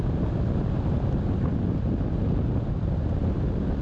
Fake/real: real